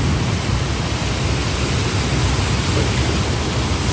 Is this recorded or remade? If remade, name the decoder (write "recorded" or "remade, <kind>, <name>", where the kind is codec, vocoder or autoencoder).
recorded